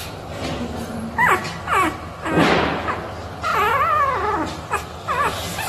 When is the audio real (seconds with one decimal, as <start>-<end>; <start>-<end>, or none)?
0.0-5.7